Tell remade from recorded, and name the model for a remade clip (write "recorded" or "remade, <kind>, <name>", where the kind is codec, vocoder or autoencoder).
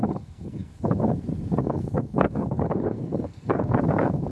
remade, codec, SNAC